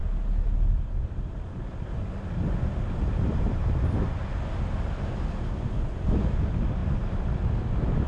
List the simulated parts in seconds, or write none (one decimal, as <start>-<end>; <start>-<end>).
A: none